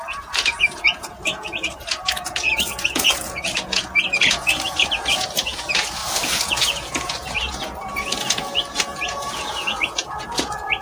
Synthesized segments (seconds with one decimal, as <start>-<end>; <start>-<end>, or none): 0.0-10.8